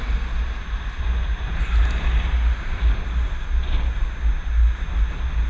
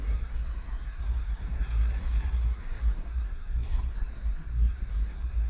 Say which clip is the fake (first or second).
second